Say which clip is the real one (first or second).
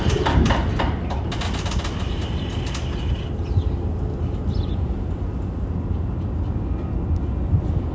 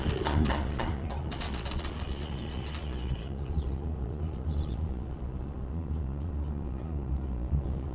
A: first